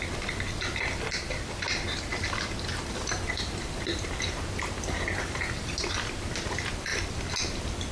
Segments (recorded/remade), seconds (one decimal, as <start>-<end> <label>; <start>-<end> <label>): 0.0-7.9 recorded